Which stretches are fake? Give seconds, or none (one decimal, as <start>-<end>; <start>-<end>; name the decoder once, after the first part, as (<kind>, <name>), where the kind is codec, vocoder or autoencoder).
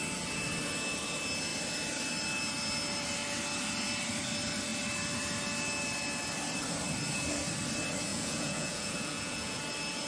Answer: 8.1-9.6 (vocoder, Vocos)